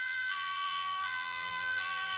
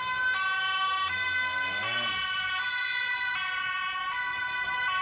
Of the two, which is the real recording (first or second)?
second